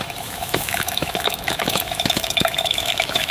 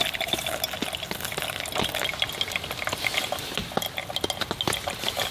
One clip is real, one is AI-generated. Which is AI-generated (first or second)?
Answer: first